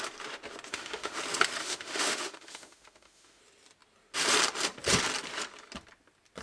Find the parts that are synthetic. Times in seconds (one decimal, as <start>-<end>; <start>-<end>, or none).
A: 0.7-1.2; 1.6-3.4

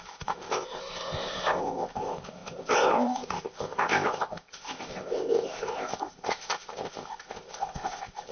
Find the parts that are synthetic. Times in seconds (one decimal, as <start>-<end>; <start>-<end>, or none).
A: 0.0-8.3